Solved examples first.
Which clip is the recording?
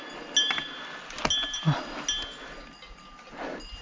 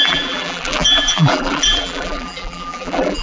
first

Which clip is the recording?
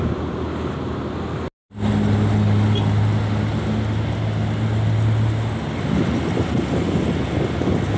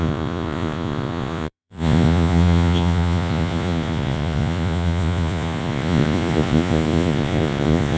first